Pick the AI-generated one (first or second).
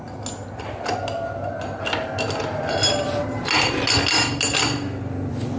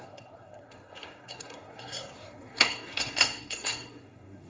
second